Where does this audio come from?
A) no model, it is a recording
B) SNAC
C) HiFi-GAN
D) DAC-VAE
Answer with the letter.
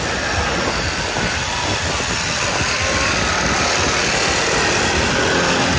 A